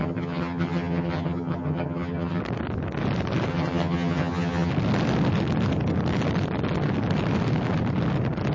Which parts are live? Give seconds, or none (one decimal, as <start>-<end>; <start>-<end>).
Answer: 2.4-3.5; 4.7-8.5